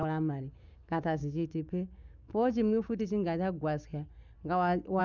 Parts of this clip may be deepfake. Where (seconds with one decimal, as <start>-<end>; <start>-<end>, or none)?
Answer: 0.0-3.0